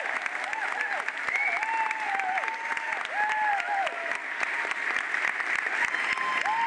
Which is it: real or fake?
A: real